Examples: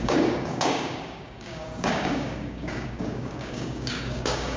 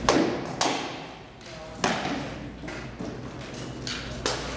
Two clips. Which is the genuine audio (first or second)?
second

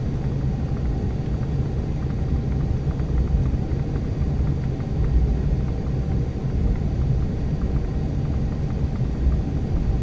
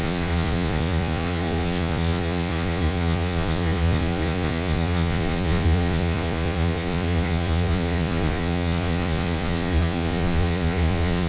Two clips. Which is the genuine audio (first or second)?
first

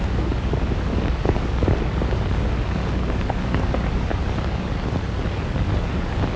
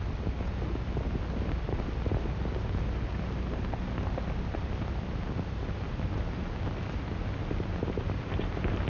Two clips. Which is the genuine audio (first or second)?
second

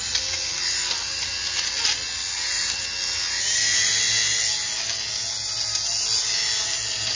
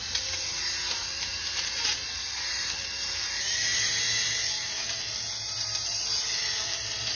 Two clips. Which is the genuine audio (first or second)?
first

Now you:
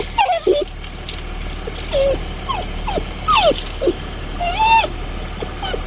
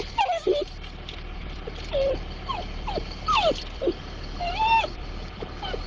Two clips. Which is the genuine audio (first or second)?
first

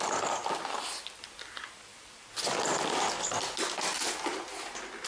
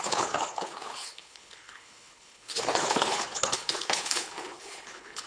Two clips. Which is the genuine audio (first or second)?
first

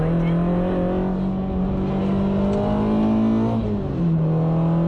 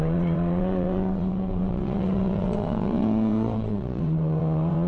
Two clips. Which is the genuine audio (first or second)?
first